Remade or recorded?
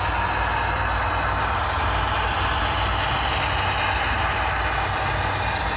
recorded